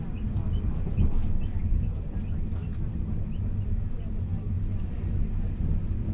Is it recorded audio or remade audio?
recorded